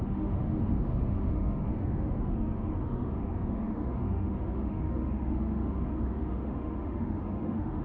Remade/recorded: remade